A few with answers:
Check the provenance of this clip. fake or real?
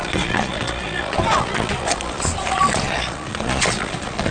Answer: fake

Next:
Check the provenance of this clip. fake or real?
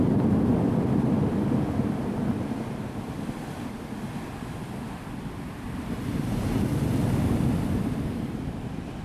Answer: real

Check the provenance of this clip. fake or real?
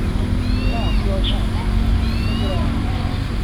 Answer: real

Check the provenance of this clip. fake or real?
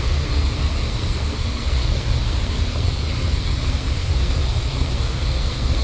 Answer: fake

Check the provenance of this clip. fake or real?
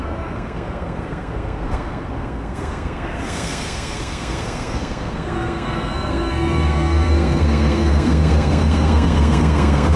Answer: fake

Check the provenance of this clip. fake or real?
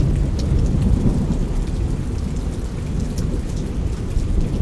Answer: real